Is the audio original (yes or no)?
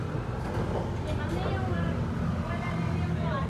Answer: yes